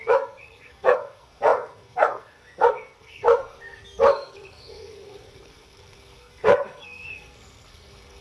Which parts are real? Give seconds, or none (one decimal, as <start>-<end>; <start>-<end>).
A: none